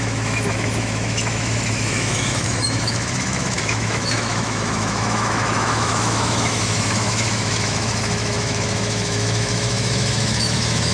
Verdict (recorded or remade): remade